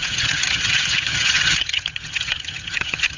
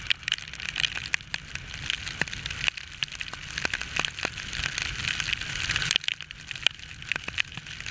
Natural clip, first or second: second